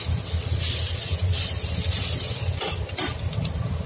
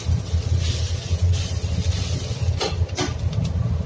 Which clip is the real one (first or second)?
second